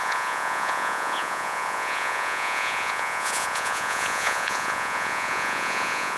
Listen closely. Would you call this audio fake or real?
fake